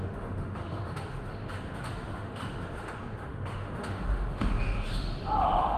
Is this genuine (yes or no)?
no